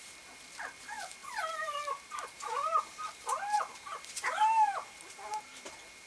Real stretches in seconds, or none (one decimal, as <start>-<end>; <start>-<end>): 0.0-1.2; 4.1-6.1